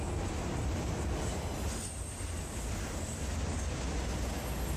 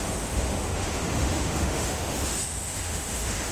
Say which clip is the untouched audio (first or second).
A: first